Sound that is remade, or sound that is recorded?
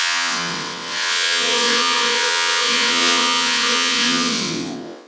remade